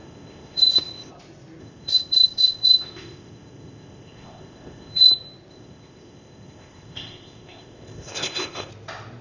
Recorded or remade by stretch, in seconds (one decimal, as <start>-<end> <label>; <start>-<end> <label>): 0.0-1.1 remade; 1.1-1.6 recorded; 1.6-5.1 remade; 5.1-5.5 recorded; 5.5-8.7 remade; 8.7-9.2 recorded